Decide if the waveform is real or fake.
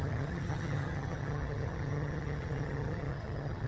fake